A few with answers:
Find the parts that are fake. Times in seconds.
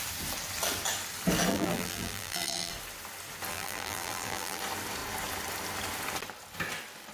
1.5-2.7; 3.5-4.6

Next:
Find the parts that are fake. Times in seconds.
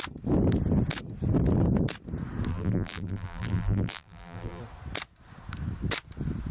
2.5-4.6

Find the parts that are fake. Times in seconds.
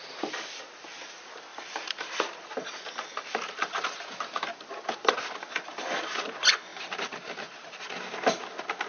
1.5-2.4; 5.7-6.3; 6.7-7.8